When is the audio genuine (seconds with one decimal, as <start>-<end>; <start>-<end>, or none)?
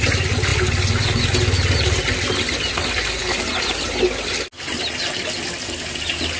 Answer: 0.0-6.4